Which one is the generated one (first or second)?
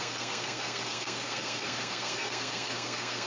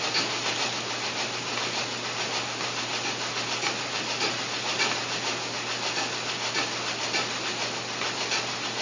first